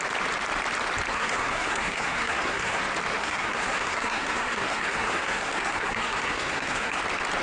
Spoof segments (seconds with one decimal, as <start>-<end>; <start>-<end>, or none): 1.1-2.8; 3.2-7.0